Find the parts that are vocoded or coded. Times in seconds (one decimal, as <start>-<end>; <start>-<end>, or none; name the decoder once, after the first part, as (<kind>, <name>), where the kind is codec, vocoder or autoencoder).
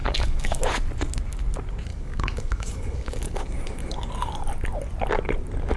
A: 0.0-0.6 (codec, DAC); 1.9-4.1